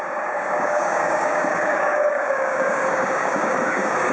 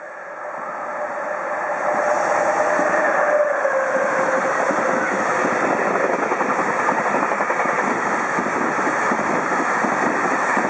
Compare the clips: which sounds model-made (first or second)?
first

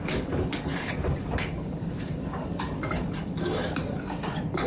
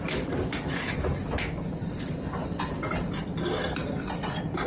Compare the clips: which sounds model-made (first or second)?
first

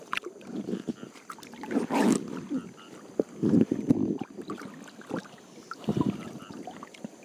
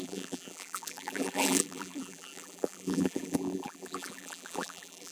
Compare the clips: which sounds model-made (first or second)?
second